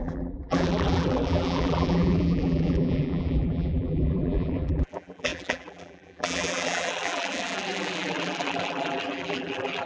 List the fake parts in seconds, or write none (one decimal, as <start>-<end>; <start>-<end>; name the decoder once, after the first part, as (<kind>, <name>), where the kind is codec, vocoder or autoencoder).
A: 0.0-9.9 (vocoder, BigVGAN v2)